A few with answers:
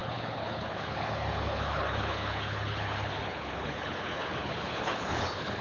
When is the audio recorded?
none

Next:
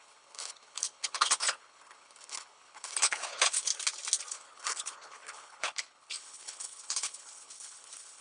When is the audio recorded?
3.7-4.3